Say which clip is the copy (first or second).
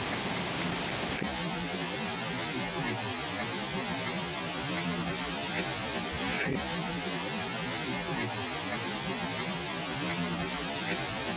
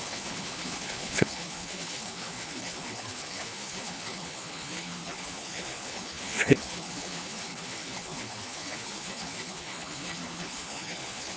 second